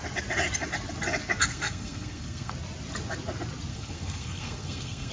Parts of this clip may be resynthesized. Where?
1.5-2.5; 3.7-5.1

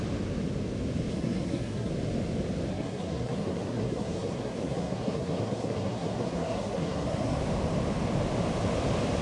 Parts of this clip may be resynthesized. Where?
1.1-1.9; 2.7-7.4

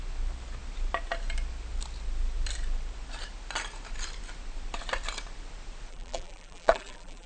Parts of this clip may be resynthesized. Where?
5.9-7.3

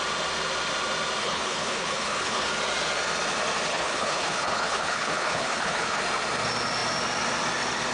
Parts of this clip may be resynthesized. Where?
1.2-2.5; 3.7-6.0

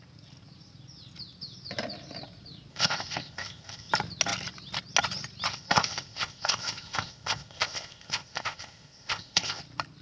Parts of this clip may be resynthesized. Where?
2.7-3.9; 5.5-9.6

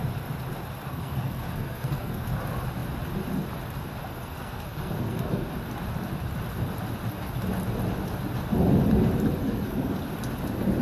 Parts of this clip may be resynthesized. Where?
0.9-2.4; 4.1-5.5; 9.4-10.0

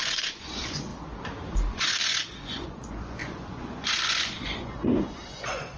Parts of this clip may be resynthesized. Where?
0.0-0.9; 1.7-5.8

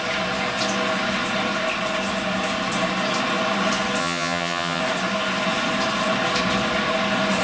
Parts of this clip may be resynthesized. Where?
4.0-4.8